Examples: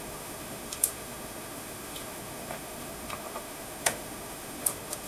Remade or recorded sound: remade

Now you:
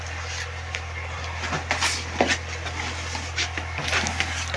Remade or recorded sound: recorded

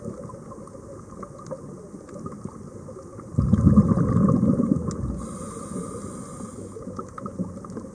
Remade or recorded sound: recorded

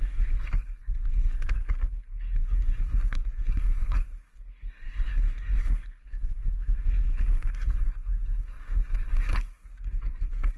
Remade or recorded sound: remade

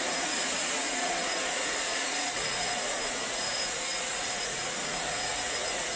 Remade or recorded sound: remade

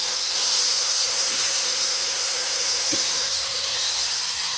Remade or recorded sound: remade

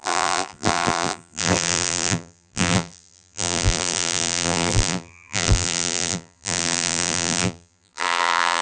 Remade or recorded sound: remade